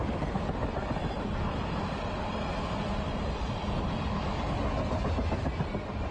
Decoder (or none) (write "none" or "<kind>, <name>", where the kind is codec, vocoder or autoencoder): none